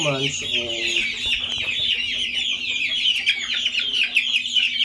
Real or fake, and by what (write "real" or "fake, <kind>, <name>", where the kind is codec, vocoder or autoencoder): real